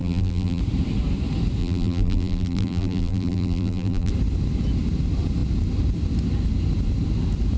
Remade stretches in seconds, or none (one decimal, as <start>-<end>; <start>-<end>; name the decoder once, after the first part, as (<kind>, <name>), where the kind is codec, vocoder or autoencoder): 0.0-0.6 (vocoder, BigVGAN v2); 1.6-4.1